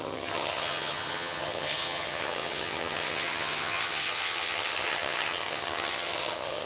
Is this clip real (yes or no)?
no